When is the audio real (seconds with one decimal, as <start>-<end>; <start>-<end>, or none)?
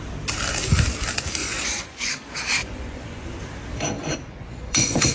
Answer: 0.0-1.4; 2.1-2.6; 3.4-4.1